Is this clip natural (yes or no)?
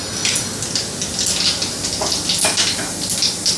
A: yes